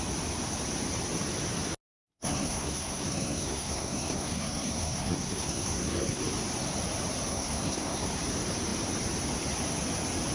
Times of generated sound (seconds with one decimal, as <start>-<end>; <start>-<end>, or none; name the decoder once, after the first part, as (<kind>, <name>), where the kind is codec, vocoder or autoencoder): 1.9-6.2 (codec, SNAC); 7.3-8.2

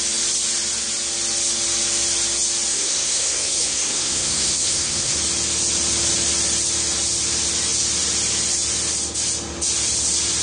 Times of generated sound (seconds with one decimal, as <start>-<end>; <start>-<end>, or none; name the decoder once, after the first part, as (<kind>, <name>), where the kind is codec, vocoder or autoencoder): 2.7-5.2 (codec, SNAC)

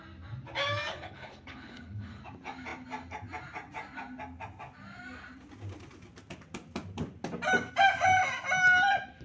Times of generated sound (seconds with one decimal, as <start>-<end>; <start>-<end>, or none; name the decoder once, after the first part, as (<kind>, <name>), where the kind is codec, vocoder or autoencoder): 0.9-2.2 (codec, HILCodec)